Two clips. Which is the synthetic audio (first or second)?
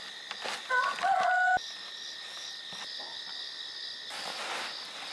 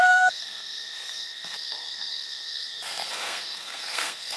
second